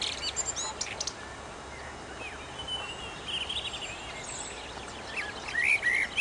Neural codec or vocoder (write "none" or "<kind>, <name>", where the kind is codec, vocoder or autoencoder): none